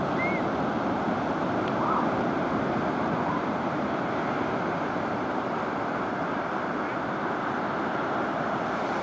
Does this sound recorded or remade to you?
recorded